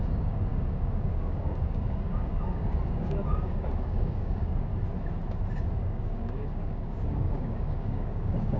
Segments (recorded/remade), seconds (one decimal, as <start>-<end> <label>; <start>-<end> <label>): 0.0-4.7 remade; 4.7-5.7 recorded; 5.7-8.6 remade